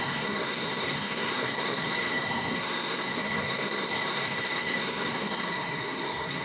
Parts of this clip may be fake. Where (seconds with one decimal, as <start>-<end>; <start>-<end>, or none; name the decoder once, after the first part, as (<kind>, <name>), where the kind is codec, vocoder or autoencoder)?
0.0-6.4 (codec, SNAC)